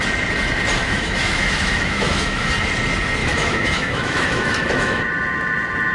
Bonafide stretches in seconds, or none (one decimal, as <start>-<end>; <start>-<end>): 0.0-0.8; 2.5-3.2; 5.0-5.9